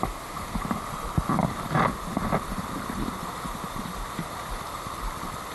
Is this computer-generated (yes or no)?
no